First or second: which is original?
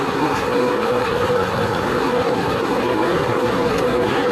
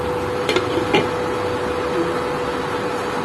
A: second